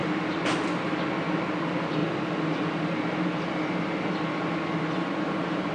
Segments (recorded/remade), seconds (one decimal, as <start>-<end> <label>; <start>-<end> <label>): 0.0-5.7 recorded